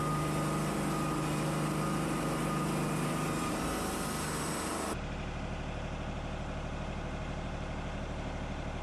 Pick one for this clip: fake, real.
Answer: real